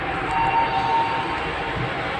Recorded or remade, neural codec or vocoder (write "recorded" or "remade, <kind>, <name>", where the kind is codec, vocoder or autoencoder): recorded